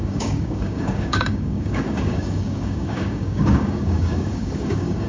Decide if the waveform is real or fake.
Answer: fake